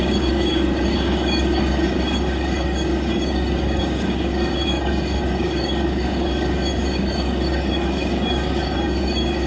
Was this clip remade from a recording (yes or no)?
yes